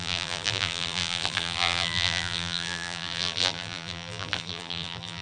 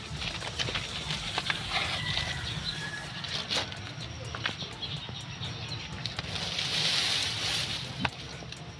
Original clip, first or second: second